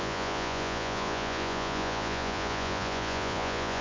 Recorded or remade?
remade